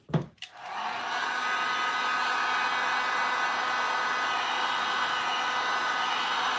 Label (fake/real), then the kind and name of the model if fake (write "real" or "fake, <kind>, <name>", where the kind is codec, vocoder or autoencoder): real